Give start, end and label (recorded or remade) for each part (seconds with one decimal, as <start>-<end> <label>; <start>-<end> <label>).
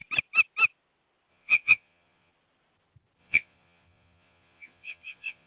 0.0-1.3 recorded; 1.3-2.3 remade; 2.3-3.2 recorded; 3.2-5.5 remade